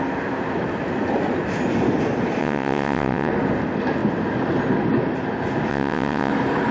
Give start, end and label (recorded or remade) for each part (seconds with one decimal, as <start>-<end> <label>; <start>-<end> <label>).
0.0-2.4 recorded; 2.4-3.3 remade; 3.3-5.7 recorded; 5.7-6.3 remade; 6.3-6.7 recorded